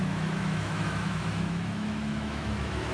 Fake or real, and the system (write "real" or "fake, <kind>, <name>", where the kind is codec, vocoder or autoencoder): fake, autoencoder, DAC-VAE